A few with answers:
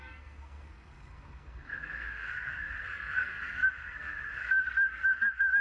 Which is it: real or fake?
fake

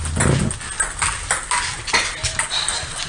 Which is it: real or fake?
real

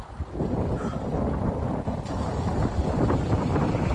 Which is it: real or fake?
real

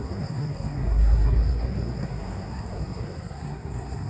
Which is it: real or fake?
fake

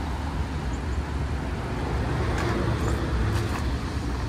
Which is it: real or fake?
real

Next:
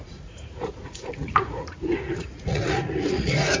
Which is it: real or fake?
fake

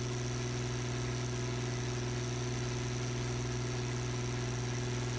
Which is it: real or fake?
real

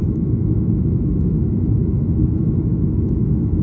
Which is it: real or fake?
fake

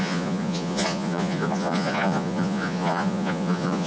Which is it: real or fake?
fake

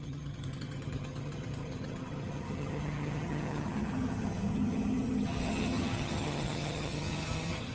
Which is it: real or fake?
fake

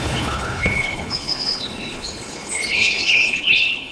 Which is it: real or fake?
fake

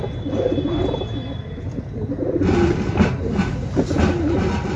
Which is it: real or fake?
real